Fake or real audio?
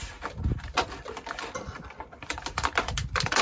real